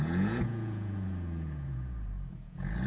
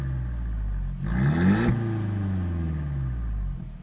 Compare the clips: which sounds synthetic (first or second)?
first